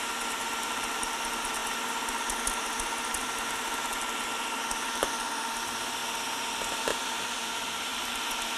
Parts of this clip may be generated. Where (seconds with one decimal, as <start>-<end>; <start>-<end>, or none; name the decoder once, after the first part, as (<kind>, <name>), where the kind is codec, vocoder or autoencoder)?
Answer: 0.0-1.6 (vocoder, BigVGAN v2); 2.8-6.0; 6.5-8.6